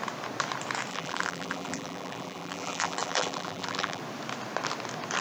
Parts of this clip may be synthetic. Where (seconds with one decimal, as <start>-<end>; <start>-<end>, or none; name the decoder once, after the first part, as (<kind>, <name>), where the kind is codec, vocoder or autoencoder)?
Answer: 0.9-4.0 (vocoder, BigVGAN v2)